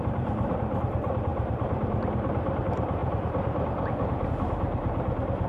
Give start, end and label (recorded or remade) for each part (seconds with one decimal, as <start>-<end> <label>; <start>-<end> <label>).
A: 0.0-5.5 remade